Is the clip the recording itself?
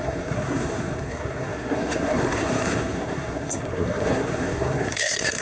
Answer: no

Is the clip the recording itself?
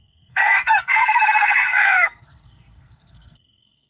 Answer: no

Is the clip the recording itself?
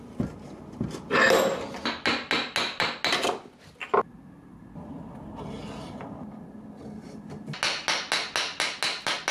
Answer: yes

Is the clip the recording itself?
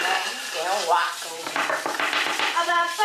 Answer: yes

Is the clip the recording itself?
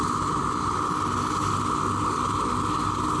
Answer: yes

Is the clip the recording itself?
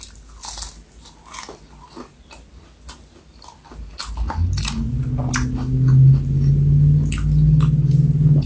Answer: yes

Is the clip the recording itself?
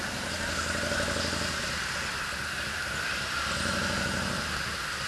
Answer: yes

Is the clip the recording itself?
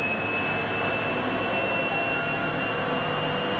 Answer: yes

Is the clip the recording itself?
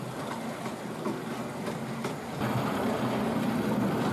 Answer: yes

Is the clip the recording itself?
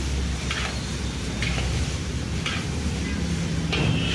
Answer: yes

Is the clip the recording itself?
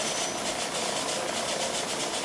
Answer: yes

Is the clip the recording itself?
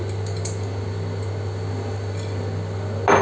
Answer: yes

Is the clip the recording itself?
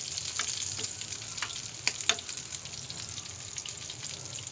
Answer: yes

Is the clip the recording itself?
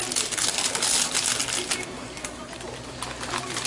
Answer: yes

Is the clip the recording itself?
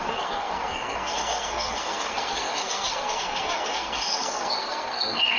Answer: no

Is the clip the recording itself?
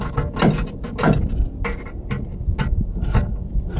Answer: yes